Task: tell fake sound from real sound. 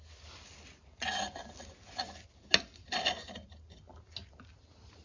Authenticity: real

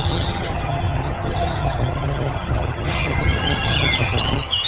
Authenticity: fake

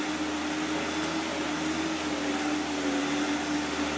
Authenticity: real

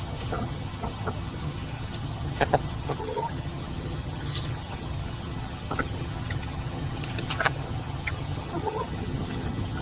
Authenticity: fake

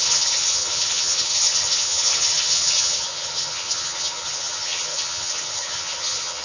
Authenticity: fake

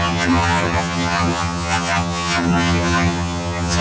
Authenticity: fake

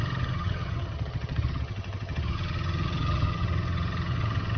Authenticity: fake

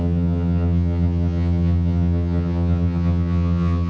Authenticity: fake